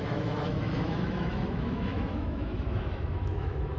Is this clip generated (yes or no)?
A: yes